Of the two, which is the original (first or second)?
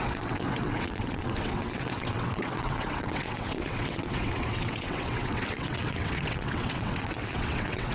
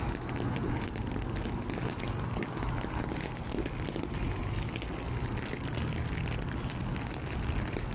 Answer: second